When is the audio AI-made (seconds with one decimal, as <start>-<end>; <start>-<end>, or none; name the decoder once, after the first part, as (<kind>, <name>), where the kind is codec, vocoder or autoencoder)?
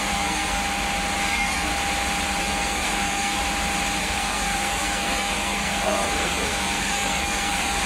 0.0-0.6 (codec, SNAC); 1.2-1.7; 2.4-3.4; 4.0-7.9